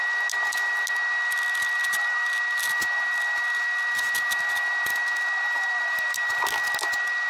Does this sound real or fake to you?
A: real